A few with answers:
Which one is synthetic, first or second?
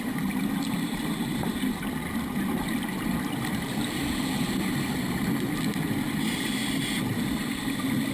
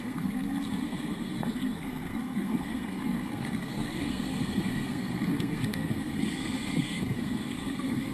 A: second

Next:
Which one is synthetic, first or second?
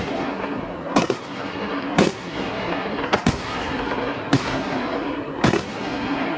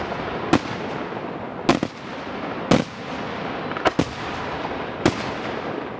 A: first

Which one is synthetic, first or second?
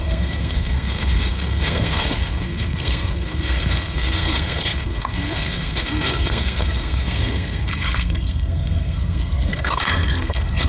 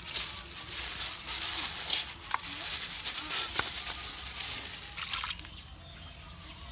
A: first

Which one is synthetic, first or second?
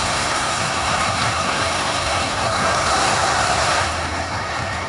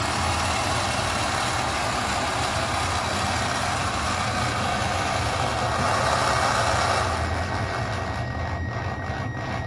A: first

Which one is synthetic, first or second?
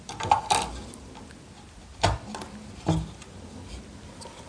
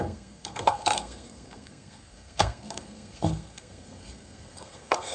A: second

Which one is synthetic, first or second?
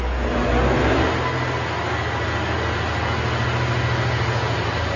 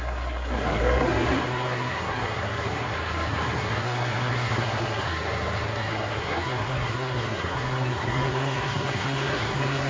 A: second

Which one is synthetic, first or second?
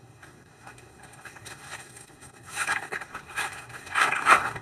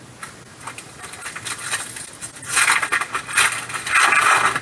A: first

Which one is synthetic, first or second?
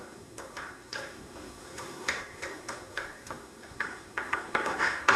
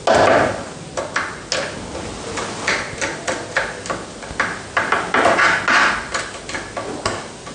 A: first